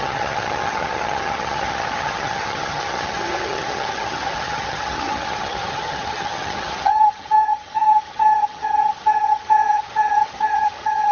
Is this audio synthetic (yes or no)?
yes